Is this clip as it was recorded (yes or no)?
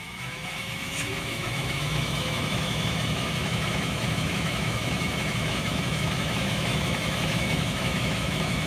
no